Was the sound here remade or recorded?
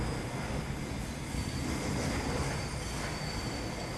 recorded